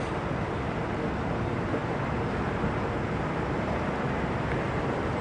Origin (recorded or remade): recorded